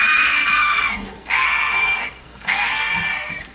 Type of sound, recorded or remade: remade